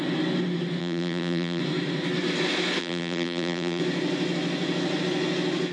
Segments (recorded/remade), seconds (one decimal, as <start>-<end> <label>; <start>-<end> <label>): 0.0-0.8 recorded; 0.8-1.6 remade; 1.6-2.8 recorded; 2.8-3.8 remade; 3.8-5.7 recorded